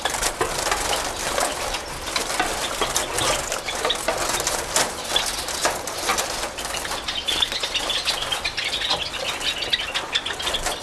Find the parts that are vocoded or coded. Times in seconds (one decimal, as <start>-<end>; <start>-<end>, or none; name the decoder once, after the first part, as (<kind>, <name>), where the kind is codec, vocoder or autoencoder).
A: none